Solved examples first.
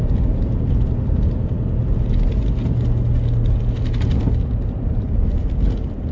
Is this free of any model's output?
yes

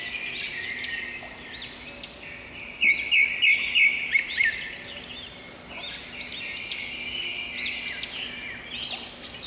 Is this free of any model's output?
yes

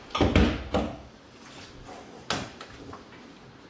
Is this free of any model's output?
yes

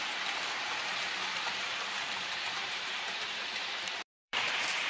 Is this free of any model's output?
no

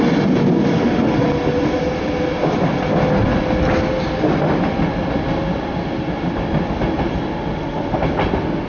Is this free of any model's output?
yes